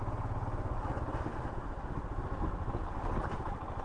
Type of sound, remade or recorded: recorded